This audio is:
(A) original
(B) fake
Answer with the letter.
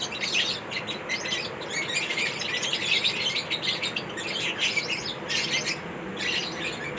A